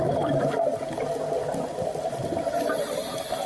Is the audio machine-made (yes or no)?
no